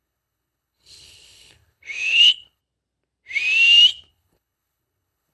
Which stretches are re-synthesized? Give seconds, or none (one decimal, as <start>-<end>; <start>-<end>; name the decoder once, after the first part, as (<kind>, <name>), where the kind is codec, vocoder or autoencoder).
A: 0.0-2.6 (codec, HILCodec); 4.1-5.3